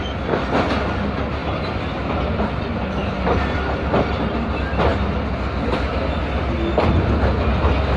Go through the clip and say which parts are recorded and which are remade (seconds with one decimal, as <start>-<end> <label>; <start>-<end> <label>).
0.0-8.0 recorded

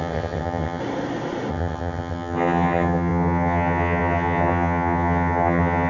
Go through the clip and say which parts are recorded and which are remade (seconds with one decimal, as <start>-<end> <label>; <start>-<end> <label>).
0.0-0.8 remade; 0.8-1.5 recorded; 1.5-5.9 remade

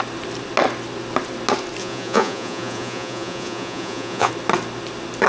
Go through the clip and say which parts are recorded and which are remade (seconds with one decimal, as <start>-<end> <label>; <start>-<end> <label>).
0.0-1.8 recorded; 1.8-4.3 remade; 4.3-5.3 recorded